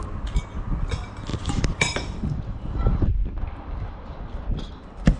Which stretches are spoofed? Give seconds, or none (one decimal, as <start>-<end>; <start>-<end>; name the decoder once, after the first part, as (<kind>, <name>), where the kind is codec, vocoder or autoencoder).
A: 1.3-4.4 (vocoder, BigVGAN v2)